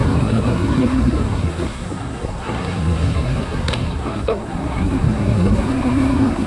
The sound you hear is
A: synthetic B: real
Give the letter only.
A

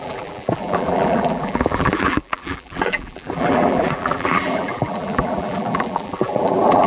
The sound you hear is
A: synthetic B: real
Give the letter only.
A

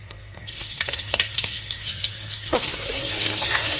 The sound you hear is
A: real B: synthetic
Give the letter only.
B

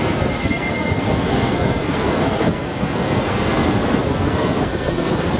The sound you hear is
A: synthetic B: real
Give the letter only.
A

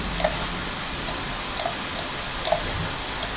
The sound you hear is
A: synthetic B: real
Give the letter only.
B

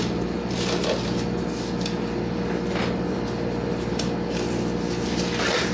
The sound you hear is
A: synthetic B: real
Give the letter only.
B